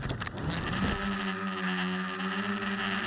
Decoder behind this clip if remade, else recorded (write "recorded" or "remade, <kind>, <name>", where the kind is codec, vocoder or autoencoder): recorded